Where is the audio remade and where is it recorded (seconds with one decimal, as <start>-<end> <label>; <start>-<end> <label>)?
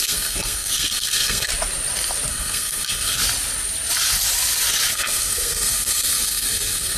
0.0-1.5 remade; 1.5-2.3 recorded; 2.3-3.2 remade; 3.2-4.9 recorded; 4.9-7.0 remade